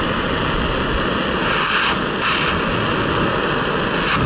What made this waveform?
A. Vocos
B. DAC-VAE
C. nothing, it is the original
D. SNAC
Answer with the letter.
C